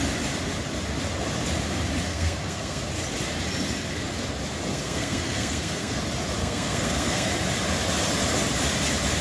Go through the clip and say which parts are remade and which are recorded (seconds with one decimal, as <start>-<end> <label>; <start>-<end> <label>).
0.0-2.1 recorded; 2.1-2.9 remade; 2.9-4.7 recorded; 4.7-6.0 remade; 6.0-6.4 recorded; 6.4-7.3 remade; 7.3-9.2 recorded